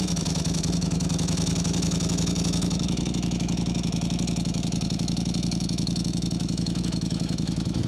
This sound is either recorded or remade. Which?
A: remade